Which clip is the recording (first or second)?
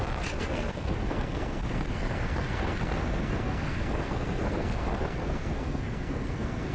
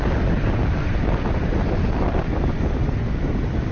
second